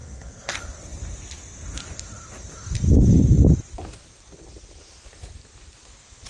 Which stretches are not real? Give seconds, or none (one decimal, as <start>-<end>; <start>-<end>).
0.0-0.5